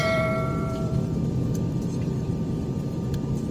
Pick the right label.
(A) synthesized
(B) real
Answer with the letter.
A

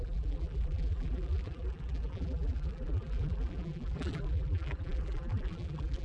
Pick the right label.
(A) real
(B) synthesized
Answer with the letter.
B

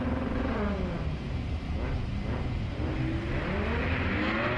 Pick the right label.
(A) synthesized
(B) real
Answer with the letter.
B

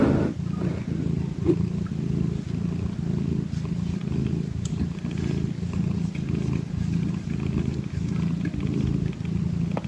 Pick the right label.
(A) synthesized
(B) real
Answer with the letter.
B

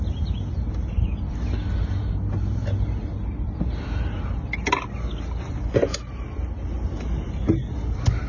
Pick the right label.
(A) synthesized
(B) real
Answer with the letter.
B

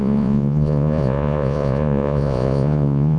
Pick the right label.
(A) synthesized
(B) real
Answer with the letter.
A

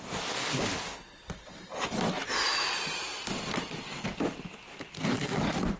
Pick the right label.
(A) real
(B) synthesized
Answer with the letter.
A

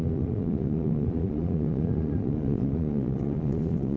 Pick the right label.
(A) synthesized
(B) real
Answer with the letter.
A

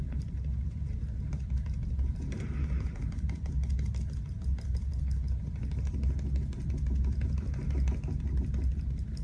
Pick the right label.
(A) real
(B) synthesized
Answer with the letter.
A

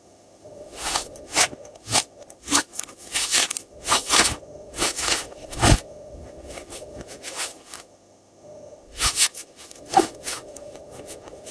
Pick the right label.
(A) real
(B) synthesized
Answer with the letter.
B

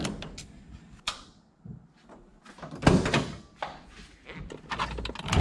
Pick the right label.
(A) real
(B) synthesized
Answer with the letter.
A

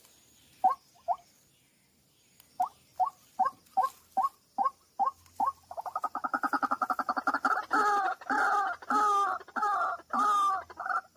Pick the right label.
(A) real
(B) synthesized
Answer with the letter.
A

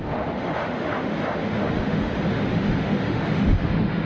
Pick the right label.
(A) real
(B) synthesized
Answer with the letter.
B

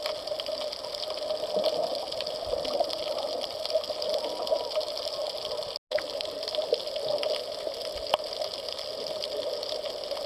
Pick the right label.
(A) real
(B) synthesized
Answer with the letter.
A